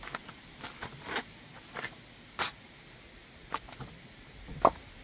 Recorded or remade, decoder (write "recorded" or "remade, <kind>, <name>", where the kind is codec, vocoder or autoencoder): recorded